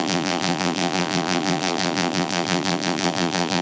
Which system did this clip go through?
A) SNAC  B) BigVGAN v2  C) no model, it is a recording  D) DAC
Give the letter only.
B